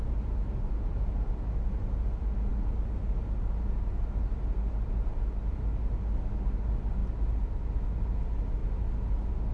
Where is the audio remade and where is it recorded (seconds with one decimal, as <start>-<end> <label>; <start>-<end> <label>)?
0.0-9.5 recorded